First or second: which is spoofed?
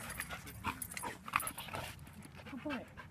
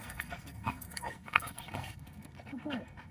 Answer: second